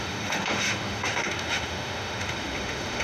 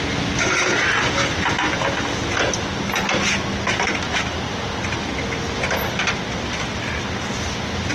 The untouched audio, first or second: second